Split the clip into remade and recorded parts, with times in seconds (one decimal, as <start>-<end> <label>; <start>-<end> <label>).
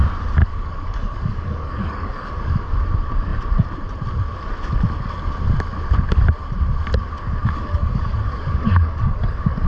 0.0-0.4 recorded; 0.4-2.7 remade; 2.7-7.4 recorded; 7.4-9.7 remade